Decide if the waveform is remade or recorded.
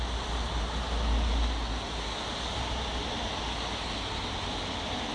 recorded